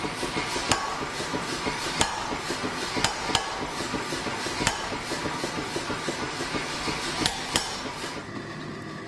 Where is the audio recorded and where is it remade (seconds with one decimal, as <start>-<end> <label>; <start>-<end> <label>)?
0.0-9.1 recorded